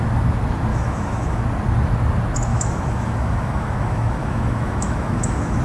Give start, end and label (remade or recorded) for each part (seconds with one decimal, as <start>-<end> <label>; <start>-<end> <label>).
0.0-0.7 recorded; 0.7-1.4 remade; 1.4-2.5 recorded; 2.5-5.6 remade